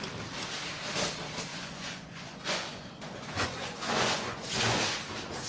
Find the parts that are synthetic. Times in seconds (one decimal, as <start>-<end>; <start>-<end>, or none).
1.5-4.8